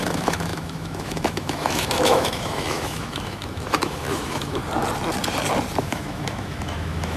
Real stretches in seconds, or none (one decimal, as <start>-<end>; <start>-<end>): 4.6-5.8